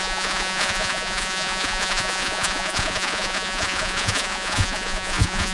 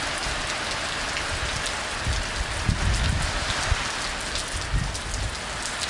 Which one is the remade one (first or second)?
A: first